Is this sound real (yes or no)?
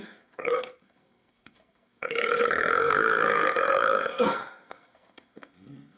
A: no